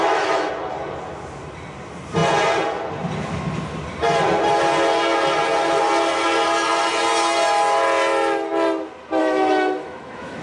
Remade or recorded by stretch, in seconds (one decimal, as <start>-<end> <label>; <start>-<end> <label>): 0.0-0.5 remade; 0.5-9.2 recorded; 9.2-10.4 remade